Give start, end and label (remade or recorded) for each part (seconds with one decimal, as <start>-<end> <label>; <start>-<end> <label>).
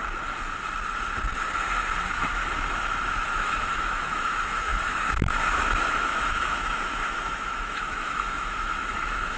0.0-2.0 recorded; 2.0-2.4 remade; 2.4-3.1 recorded; 3.1-9.4 remade